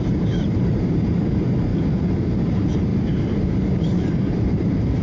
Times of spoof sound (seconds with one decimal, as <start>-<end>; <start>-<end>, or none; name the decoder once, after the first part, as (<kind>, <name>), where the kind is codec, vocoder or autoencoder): 0.0-1.7 (vocoder, BigVGAN v2); 2.5-5.0

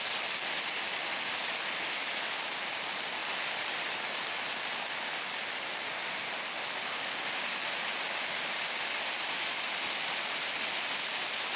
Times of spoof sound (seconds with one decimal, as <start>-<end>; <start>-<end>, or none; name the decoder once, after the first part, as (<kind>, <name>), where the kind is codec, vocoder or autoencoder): none

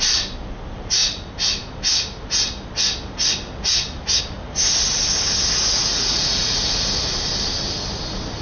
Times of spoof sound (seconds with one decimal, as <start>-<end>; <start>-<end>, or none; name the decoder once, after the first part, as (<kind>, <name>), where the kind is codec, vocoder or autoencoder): 5.6-6.6 (vocoder, Vocos)